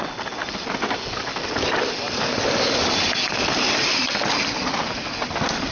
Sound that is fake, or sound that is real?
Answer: real